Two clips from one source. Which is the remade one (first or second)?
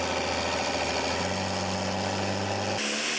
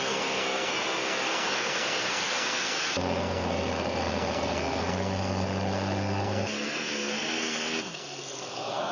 second